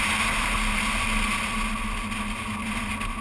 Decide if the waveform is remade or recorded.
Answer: recorded